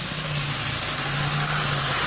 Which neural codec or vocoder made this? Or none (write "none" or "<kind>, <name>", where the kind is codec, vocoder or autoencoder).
none